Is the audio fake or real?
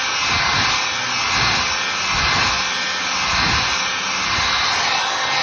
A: real